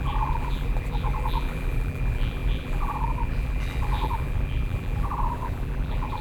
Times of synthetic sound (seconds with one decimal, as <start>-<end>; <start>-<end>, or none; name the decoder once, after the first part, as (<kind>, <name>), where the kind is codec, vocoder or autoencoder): 0.0-6.2 (vocoder, BigVGAN v2)